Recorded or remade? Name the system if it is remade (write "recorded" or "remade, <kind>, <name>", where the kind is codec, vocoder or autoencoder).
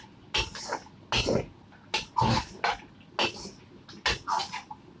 recorded